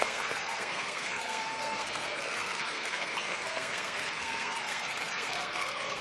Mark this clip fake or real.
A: fake